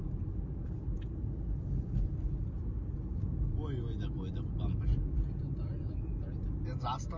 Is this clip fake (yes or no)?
no